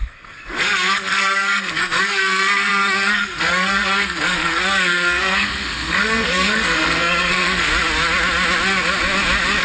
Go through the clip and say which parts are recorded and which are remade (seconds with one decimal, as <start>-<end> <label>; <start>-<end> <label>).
0.0-7.7 remade; 7.7-9.6 recorded